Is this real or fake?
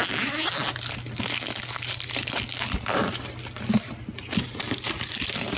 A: real